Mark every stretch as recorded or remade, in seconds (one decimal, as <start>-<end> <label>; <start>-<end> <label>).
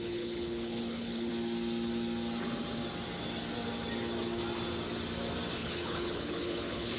0.0-1.3 remade; 1.3-5.5 recorded; 5.5-7.0 remade